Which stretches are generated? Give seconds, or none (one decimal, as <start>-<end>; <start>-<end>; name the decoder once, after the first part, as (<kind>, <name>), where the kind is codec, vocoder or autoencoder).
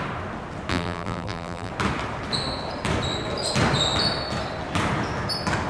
0.7-1.7 (vocoder, BigVGAN v2)